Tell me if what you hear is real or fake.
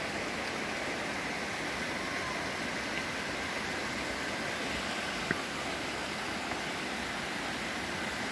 real